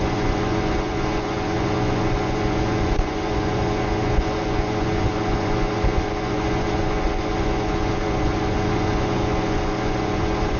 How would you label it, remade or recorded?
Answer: remade